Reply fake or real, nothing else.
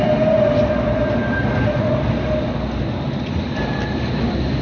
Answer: real